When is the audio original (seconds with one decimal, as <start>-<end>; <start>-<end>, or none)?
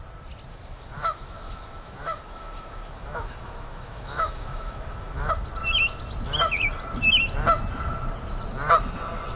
0.0-0.5; 5.3-9.4